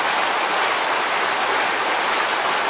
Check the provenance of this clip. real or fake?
real